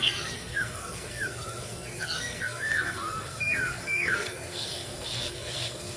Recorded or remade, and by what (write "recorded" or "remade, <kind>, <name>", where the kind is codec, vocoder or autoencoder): remade, codec, SNAC